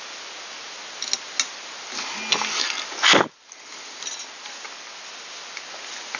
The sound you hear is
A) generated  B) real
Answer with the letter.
B